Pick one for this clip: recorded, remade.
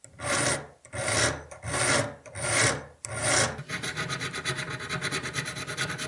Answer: recorded